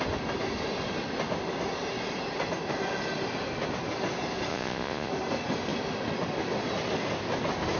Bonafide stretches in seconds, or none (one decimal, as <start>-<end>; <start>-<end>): 0.0-4.5; 5.1-7.8